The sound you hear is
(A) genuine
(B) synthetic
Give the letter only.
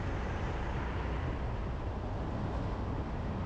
A